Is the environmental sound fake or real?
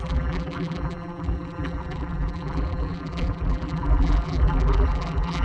fake